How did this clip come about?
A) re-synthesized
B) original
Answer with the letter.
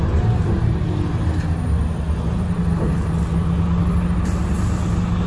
B